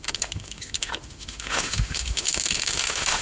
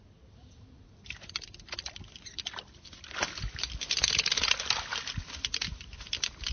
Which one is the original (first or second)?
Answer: second